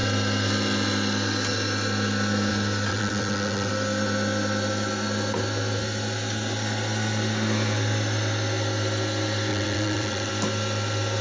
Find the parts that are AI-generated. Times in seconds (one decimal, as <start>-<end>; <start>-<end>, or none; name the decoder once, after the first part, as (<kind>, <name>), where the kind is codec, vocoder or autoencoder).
2.9-3.7 (vocoder, WaveNeXt); 9.5-10.3